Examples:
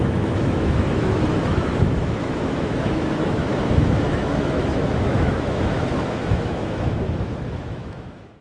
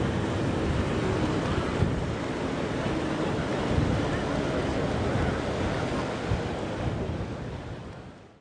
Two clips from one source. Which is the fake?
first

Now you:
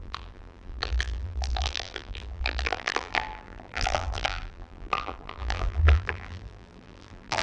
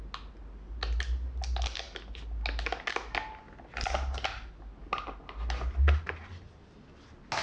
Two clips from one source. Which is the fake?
first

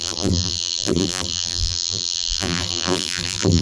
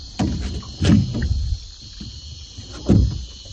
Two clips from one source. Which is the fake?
first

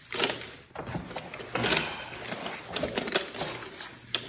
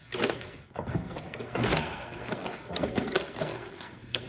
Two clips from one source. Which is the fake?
second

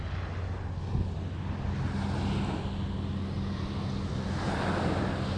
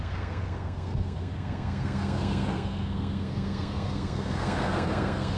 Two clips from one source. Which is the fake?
second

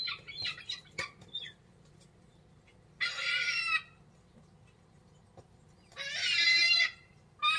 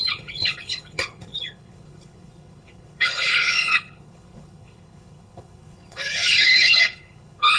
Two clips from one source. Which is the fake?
second